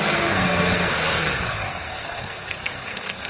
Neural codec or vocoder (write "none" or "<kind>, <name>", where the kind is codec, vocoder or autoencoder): codec, SNAC